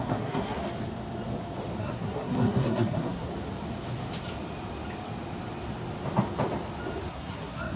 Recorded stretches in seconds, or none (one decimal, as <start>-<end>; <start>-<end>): 0.6-1.8; 3.3-7.1